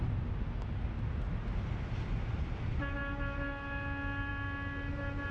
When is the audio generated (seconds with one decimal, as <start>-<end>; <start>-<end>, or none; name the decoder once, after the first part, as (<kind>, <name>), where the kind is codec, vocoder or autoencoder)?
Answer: none